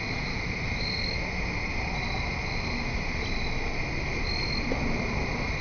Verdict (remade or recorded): recorded